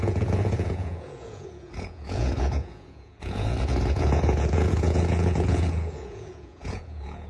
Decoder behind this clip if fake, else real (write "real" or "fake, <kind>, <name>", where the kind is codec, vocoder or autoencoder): fake, vocoder, Vocos